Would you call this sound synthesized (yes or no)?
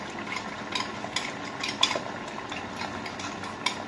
no